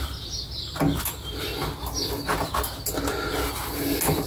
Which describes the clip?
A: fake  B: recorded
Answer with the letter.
B